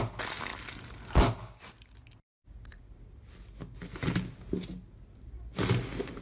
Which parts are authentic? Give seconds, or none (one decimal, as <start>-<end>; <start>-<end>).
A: 0.0-6.2